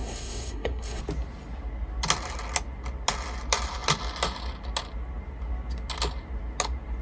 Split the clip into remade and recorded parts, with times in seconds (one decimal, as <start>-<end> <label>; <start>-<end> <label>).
0.0-1.0 remade; 1.0-7.0 recorded